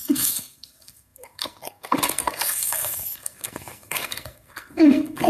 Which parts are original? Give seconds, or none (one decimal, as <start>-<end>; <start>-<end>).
none